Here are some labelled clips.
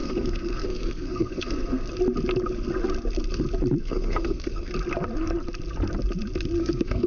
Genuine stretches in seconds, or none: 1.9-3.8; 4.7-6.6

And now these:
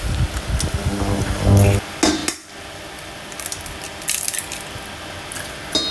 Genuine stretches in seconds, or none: 0.0-5.9